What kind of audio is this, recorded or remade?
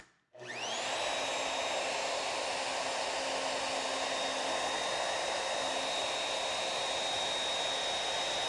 recorded